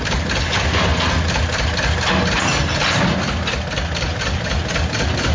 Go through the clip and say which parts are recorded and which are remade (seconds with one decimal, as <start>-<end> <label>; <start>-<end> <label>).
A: 0.0-5.3 recorded